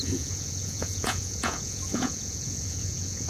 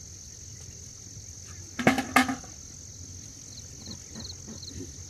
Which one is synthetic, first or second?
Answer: first